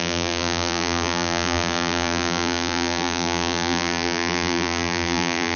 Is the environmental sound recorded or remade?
remade